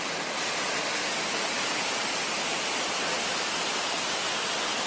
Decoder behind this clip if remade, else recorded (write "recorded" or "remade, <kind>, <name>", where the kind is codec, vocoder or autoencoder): recorded